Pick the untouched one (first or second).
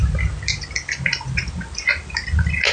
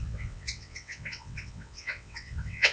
first